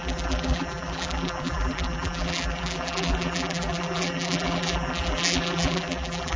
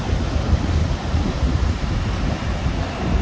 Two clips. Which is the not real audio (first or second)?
first